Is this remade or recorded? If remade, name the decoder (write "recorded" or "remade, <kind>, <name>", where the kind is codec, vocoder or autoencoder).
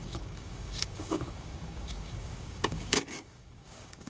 remade, codec, DAC